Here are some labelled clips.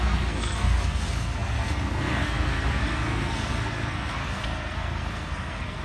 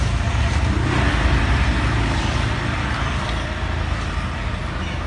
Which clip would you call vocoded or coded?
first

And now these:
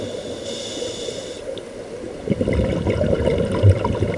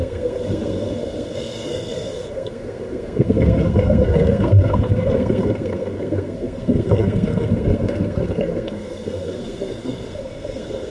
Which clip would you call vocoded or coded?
second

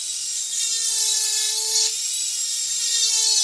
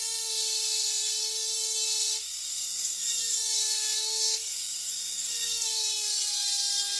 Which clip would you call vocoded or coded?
second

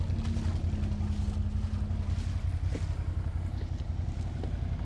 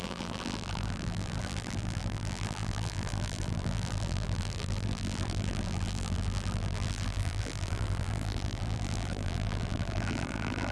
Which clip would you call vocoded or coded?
second